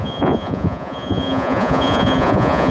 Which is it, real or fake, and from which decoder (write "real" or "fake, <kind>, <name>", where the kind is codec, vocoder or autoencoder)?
fake, vocoder, Vocos